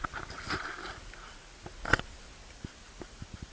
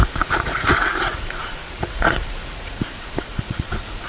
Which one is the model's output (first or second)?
second